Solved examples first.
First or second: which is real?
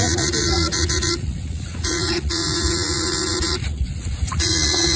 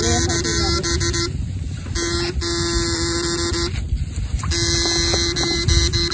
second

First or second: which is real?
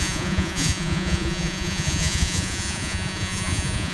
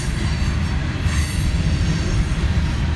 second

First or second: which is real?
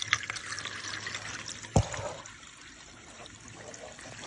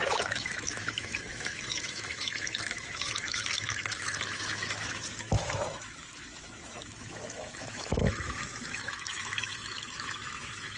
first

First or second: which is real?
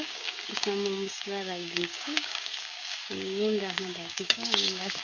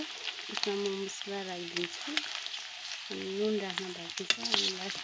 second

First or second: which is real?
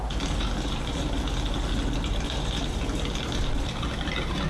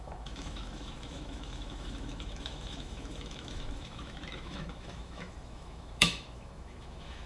first